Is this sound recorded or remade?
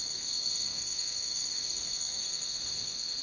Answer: remade